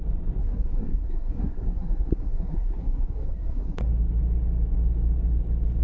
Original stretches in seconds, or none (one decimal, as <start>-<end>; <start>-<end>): 0.0-0.4; 3.9-5.8